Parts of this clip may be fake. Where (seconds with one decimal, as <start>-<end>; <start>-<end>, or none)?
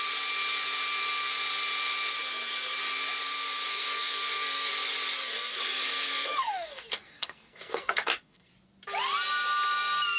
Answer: 3.7-4.7; 5.2-8.5